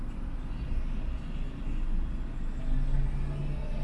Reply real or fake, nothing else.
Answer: real